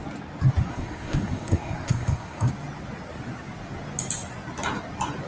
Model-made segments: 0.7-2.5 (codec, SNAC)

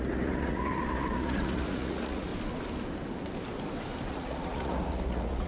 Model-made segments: 0.0-2.3 (vocoder, Vocos); 4.1-5.5

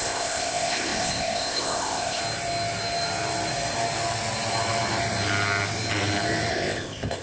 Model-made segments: 0.0-2.2 (codec, ZipCodec); 6.5-7.2

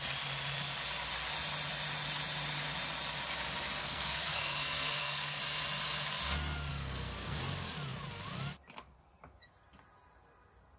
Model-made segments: 3.8-5.4 (codec, SNAC); 6.7-7.4

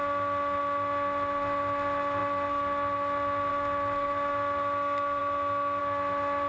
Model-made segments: none

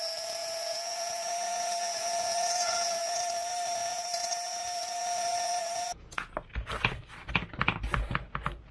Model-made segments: 0.4-3.2 (vocoder, Vocos); 3.8-6.3